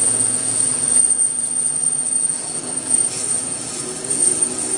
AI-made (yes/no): yes